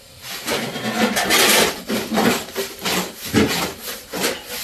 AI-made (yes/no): no